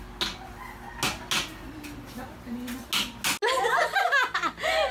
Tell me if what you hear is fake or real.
real